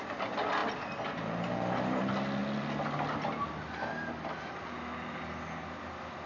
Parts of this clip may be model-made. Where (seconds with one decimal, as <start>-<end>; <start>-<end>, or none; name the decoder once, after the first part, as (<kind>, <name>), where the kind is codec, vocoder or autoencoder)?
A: none